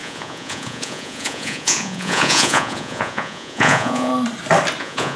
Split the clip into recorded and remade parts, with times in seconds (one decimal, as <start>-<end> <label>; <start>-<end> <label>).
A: 0.0-4.1 remade; 4.1-4.8 recorded; 4.8-5.2 remade